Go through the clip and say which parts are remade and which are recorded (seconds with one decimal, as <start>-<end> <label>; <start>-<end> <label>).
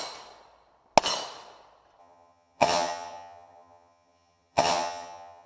0.0-2.0 recorded; 2.0-5.5 remade